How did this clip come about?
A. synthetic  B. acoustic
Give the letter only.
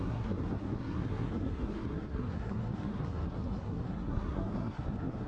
A